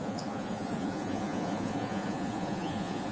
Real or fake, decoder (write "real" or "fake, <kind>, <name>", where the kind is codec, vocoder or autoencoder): fake, vocoder, Vocos